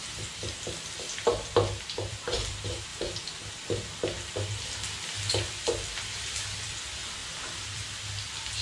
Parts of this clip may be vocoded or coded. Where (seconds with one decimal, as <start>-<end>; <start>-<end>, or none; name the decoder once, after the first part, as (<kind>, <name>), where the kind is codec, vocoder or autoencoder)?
0.9-2.9 (vocoder, BigVGAN v2); 5.3-8.6